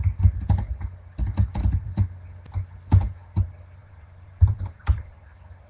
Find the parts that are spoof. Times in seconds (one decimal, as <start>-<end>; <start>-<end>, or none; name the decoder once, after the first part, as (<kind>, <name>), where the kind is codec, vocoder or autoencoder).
3.8-5.3 (vocoder, BigVGAN v2)

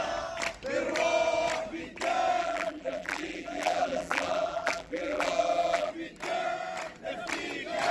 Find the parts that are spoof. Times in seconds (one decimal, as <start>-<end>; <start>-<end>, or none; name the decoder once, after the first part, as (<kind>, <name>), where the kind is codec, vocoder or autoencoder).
2.4-5.9 (vocoder, BigVGAN v2)